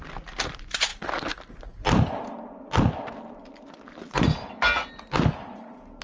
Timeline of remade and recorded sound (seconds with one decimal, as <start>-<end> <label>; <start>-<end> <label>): 0.0-6.0 recorded